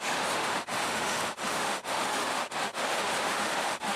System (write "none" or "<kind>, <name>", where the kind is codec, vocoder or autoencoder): autoencoder, DAC-VAE